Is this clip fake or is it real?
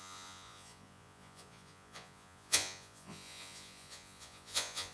fake